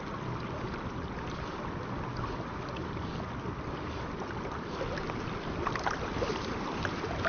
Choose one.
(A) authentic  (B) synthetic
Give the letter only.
A